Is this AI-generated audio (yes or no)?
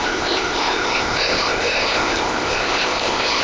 yes